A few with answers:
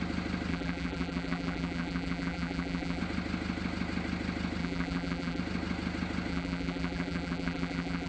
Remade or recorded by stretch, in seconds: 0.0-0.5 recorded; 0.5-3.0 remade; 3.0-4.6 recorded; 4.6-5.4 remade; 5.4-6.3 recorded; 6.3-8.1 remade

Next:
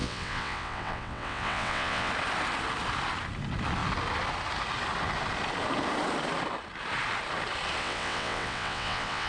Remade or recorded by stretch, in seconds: 0.0-2.1 remade; 2.1-7.8 recorded; 7.8-9.3 remade

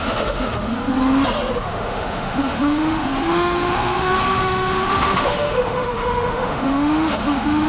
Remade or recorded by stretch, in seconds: 0.0-0.7 remade; 0.7-1.6 recorded; 1.6-7.7 remade

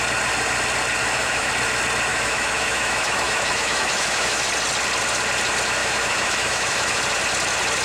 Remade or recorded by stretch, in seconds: 0.0-1.0 recorded; 1.0-1.5 remade; 1.5-2.1 recorded; 2.1-4.5 remade; 4.5-5.8 recorded; 5.8-7.0 remade; 7.0-7.8 recorded

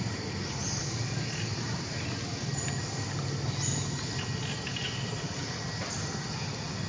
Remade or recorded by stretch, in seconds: 0.0-6.9 recorded

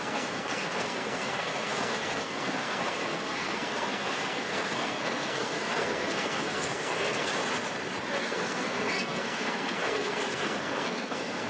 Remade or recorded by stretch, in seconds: 0.0-7.3 remade; 7.3-8.2 recorded; 8.2-11.5 remade